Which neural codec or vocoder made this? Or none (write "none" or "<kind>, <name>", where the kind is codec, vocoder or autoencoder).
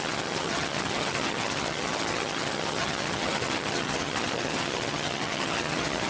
vocoder, HiFi-GAN